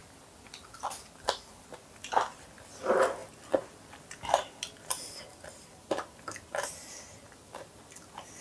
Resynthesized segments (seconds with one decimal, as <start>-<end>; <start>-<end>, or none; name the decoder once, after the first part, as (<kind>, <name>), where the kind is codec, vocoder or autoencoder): none